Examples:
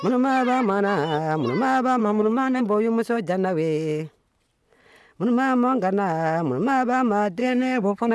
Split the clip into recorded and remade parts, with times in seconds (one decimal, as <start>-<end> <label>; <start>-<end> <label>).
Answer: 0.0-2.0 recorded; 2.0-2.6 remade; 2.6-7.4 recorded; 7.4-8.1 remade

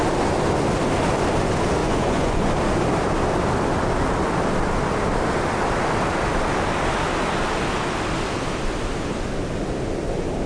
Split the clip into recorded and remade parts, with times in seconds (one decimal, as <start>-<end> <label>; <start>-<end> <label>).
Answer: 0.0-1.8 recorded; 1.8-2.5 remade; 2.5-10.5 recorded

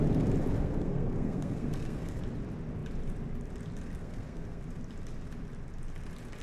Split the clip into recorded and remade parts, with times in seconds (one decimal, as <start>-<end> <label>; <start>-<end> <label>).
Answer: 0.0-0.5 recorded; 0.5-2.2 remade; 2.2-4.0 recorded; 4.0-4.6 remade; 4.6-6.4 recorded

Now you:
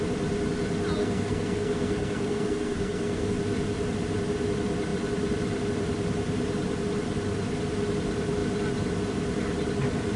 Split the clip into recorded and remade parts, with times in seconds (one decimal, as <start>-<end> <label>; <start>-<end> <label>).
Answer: 0.0-1.0 recorded; 1.0-3.4 remade; 3.4-10.2 recorded